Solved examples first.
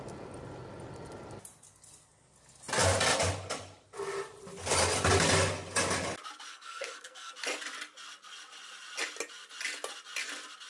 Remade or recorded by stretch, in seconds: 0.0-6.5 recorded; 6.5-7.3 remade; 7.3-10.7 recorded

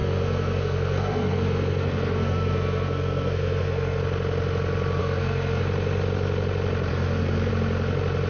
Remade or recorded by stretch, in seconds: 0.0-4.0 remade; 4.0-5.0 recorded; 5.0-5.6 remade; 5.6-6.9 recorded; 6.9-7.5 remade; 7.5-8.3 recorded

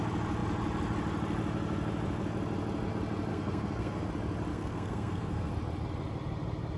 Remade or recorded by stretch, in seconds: 0.0-3.3 recorded; 3.3-4.1 remade; 4.1-4.5 recorded; 4.5-5.5 remade; 5.5-6.8 recorded